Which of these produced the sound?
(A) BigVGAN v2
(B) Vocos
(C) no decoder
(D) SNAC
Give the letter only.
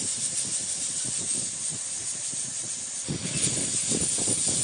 C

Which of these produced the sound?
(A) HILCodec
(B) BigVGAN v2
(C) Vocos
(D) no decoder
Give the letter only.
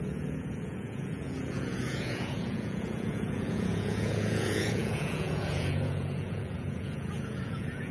C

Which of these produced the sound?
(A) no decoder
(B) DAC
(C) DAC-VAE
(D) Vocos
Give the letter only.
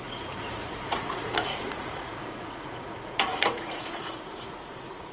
D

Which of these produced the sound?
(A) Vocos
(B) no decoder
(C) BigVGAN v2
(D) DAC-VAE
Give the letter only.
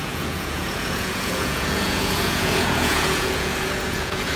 A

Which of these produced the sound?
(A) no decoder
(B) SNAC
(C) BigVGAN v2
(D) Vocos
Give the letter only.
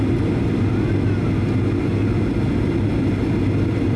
A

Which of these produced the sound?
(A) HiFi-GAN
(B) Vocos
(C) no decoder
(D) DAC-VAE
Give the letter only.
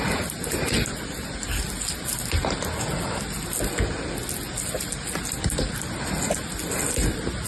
C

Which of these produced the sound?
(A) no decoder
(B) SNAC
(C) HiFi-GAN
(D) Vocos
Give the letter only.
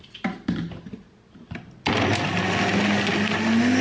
A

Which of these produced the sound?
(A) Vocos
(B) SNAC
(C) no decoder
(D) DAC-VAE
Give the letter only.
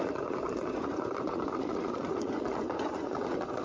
A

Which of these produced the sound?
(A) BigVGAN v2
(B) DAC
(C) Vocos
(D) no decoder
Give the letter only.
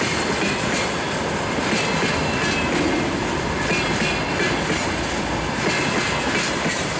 D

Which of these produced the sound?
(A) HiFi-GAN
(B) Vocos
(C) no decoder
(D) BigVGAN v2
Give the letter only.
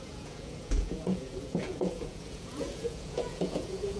B